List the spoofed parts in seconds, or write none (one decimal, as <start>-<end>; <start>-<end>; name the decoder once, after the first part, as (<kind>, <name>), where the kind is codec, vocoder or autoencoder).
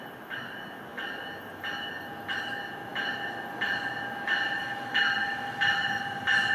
4.6-6.0 (autoencoder, DAC-VAE)